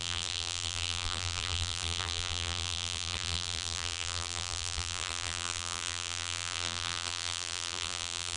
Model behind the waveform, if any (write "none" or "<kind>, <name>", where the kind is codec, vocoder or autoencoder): vocoder, BigVGAN v2